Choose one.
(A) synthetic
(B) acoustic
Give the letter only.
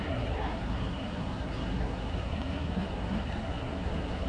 A